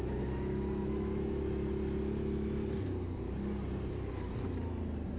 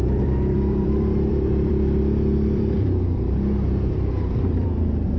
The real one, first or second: first